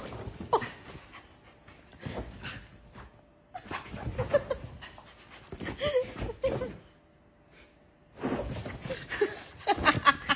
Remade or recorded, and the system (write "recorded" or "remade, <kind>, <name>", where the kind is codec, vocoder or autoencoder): recorded